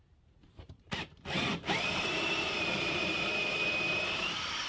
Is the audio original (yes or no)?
no